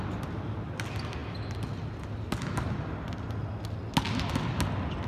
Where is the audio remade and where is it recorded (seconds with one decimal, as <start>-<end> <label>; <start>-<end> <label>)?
0.0-5.1 recorded